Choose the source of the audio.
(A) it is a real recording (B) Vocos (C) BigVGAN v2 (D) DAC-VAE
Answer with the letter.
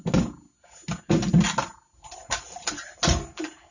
A